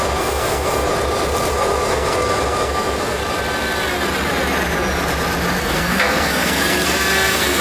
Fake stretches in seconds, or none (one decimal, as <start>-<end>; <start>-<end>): 0.0-0.9; 1.5-3.2; 5.6-7.6

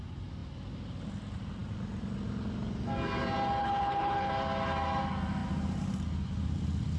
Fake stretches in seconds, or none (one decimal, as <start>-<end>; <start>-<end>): 3.6-4.3

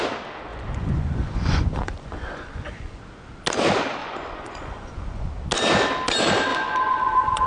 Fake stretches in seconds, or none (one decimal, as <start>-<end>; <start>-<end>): 0.5-3.0; 4.0-5.3; 6.5-7.5

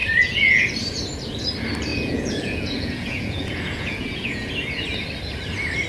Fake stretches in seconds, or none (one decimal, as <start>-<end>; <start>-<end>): 0.0-0.6; 1.9-4.5

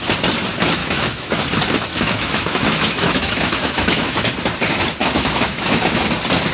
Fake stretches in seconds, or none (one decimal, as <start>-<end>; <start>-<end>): 0.8-1.4; 1.9-4.3; 5.0-6.0